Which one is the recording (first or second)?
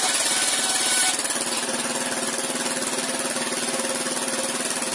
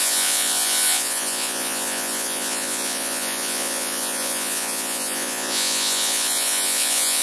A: first